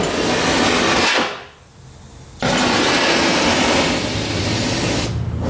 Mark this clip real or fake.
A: real